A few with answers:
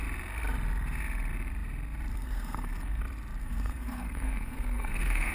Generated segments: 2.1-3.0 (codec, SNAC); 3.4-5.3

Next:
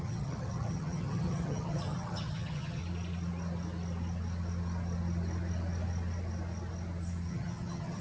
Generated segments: 0.0-2.8 (vocoder, HiFi-GAN); 7.3-8.0

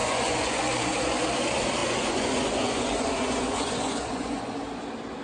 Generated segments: 0.0-0.6 (vocoder, Vocos); 1.8-4.5